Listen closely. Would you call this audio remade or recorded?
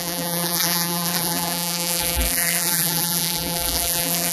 remade